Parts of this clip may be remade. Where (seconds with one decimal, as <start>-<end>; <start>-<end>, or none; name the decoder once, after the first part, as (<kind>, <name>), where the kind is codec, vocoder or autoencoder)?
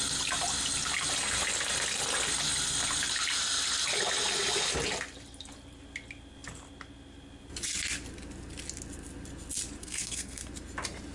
9.8-10.5 (codec, SNAC)